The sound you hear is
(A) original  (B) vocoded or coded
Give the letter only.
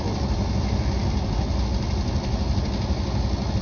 A